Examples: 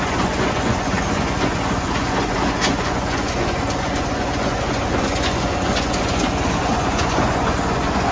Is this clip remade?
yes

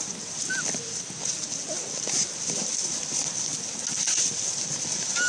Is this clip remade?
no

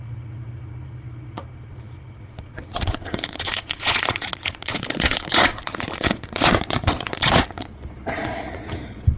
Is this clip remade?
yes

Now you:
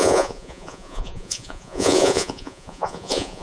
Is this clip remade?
yes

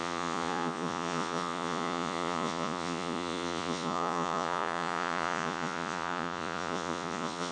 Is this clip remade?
yes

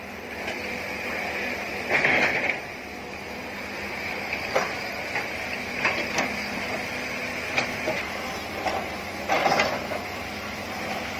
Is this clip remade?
no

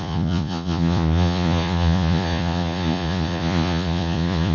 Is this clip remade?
yes